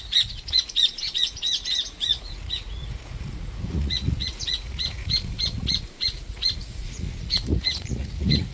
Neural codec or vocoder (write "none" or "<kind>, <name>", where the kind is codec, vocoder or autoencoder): vocoder, Vocos